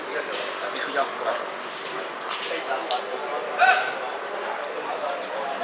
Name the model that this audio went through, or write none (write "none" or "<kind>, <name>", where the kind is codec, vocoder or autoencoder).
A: none